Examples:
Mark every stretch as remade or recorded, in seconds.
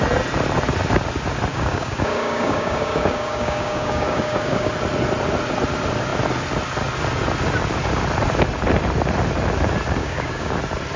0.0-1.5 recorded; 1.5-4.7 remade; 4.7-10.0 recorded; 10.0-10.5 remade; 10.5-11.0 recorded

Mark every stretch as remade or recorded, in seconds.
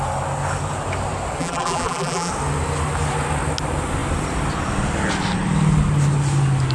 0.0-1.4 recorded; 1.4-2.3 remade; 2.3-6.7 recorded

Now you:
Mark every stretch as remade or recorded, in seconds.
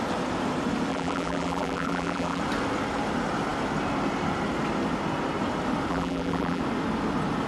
0.0-0.9 recorded; 0.9-2.4 remade; 2.4-5.9 recorded; 5.9-6.6 remade; 6.6-7.5 recorded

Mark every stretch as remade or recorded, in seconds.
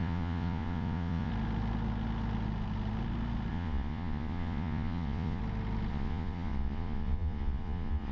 0.0-1.3 remade; 1.3-3.5 recorded; 3.5-5.4 remade; 5.4-5.9 recorded; 5.9-8.1 remade